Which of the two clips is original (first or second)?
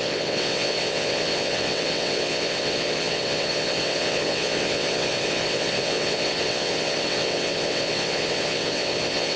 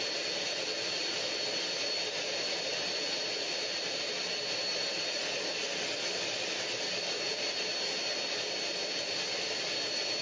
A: second